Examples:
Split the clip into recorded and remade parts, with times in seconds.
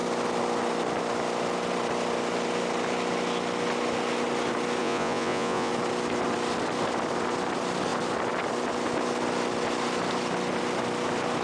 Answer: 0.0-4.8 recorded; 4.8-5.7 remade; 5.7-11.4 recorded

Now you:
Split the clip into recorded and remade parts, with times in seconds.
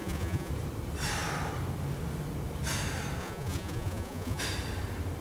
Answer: 0.0-0.5 remade; 0.5-3.2 recorded; 3.2-4.4 remade; 4.4-5.2 recorded